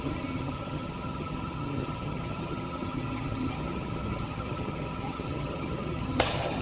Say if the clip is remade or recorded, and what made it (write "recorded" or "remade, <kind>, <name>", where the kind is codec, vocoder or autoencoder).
remade, vocoder, HiFi-GAN